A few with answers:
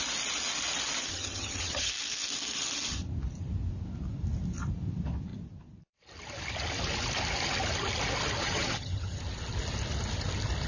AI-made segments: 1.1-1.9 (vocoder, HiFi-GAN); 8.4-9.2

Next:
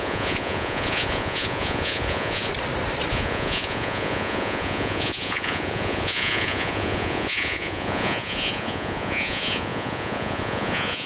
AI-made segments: 0.0-2.5 (vocoder, Vocos); 3.1-11.1

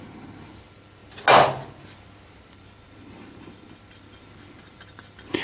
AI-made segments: 0.0-1.0 (vocoder, BigVGAN v2); 4.2-5.4

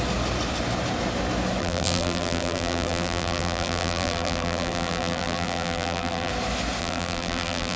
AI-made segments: 1.6-6.3 (vocoder, BigVGAN v2); 6.8-7.8

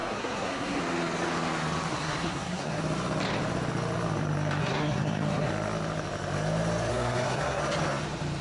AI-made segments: 0.0-0.8 (codec, SNAC); 1.9-2.8; 4.6-5.5; 6.9-7.6

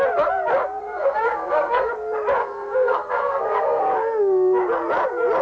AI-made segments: 0.8-1.9 (codec, SNAC); 2.4-3.8

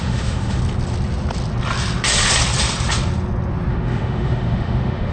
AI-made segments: 0.0-0.6 (autoencoder, DAC-VAE); 3.7-5.1

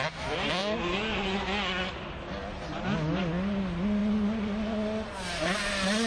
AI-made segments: none